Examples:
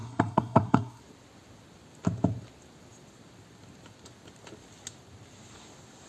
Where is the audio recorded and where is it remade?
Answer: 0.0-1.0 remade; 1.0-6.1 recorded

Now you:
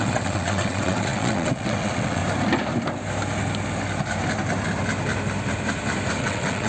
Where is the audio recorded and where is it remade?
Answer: 0.0-2.2 remade; 2.2-6.2 recorded; 6.2-6.7 remade

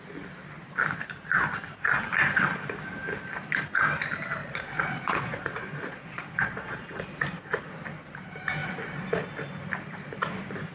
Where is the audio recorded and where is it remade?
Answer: 0.0-4.4 recorded; 4.4-7.0 remade; 7.0-10.7 recorded